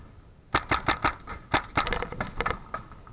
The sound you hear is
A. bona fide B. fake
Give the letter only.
A